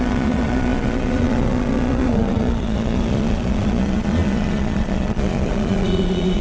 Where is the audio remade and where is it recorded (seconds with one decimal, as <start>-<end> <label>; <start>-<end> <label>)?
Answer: 0.0-6.4 remade